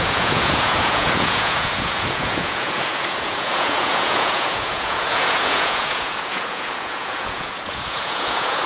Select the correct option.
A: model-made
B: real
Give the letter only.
A